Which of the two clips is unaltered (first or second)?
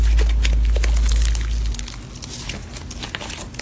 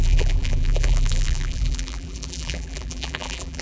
first